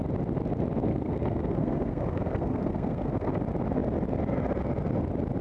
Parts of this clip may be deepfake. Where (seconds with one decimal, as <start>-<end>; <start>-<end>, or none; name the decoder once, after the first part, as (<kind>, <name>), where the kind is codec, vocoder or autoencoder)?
0.9-3.3 (codec, SNAC)